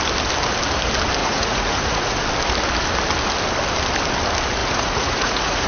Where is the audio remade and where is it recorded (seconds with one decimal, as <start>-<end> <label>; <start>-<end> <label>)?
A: 0.0-1.2 recorded; 1.2-2.2 remade; 2.2-4.6 recorded; 4.6-5.7 remade